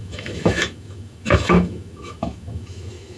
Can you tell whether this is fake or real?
fake